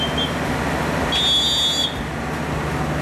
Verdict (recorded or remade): recorded